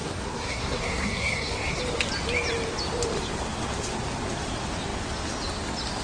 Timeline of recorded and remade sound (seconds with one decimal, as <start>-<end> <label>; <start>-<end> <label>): 0.0-1.8 remade; 1.8-6.0 recorded